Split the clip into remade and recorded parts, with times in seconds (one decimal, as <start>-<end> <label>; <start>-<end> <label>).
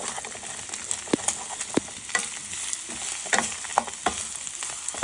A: 0.0-5.0 recorded